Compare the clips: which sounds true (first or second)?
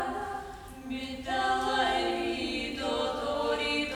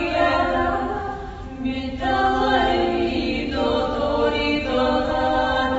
first